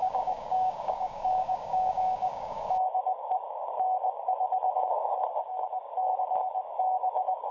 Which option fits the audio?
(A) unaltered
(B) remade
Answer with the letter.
B